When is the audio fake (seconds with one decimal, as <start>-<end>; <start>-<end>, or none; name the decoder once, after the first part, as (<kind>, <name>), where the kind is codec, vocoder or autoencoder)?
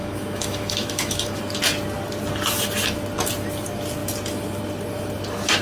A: 0.0-1.4 (autoencoder, DAC-VAE)